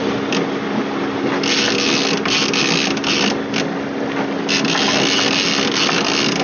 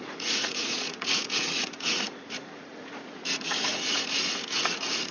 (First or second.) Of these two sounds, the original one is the first